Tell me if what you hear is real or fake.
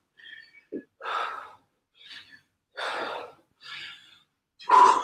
real